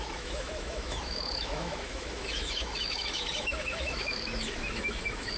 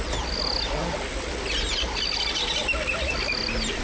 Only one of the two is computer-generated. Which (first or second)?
first